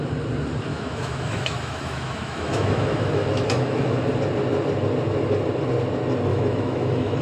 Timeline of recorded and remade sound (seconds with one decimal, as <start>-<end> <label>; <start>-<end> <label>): 0.0-0.7 recorded; 0.7-4.0 remade; 4.0-6.3 recorded; 6.3-7.2 remade